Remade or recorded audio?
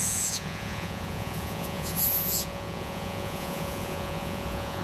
remade